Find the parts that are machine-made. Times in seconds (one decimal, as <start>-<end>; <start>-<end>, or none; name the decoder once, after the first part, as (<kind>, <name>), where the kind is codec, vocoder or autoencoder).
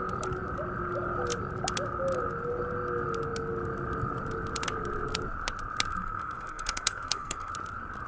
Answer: 5.9-7.5 (codec, SNAC)